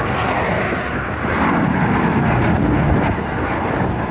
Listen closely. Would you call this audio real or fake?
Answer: real